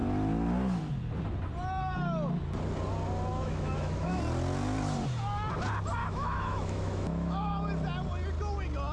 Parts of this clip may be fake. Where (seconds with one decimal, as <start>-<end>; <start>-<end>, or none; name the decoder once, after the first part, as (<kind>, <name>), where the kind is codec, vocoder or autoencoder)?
3.3-4.2 (autoencoder, DAC-VAE); 6.0-7.5